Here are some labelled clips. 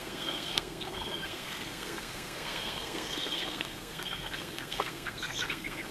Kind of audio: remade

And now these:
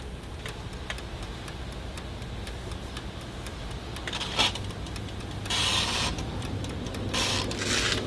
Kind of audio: recorded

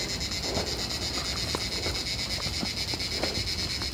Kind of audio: recorded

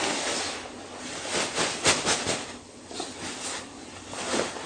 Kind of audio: recorded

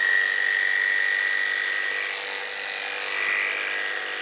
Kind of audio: recorded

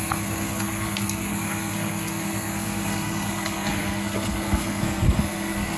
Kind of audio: remade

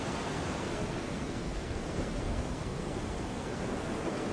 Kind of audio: remade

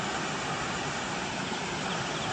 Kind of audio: recorded